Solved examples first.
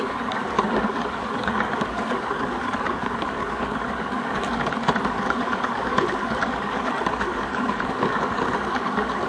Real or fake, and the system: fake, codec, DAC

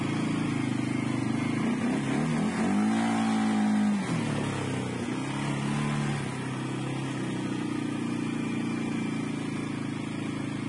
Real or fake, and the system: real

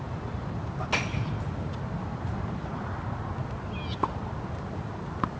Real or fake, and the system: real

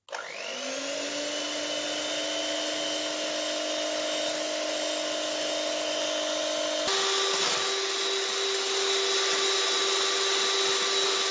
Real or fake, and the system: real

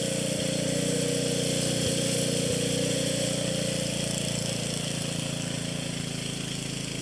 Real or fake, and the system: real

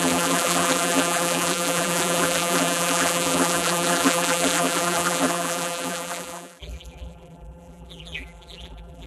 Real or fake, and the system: fake, vocoder, BigVGAN v2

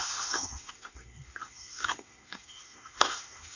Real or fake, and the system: fake, codec, SNAC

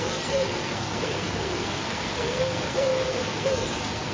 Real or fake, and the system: fake, codec, SNAC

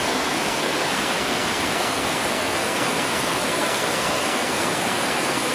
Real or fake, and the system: fake, codec, SNAC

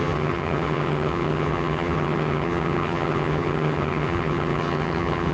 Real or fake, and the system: fake, vocoder, HiFi-GAN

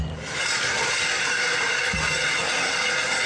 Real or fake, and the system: real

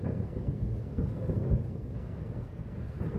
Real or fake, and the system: fake, codec, SNAC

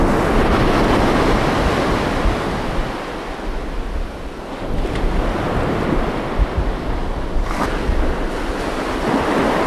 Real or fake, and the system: real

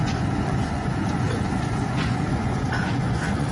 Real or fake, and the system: fake, vocoder, Vocos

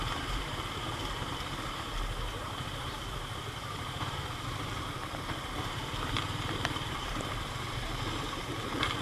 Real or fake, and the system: fake, vocoder, BigVGAN v2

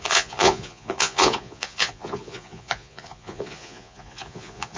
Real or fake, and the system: fake, vocoder, Vocos